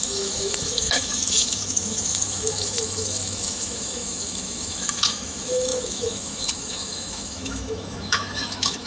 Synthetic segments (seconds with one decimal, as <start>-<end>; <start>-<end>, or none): 0.0-8.9